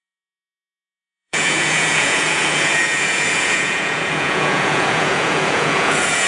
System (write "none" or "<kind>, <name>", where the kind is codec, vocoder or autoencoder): vocoder, Vocos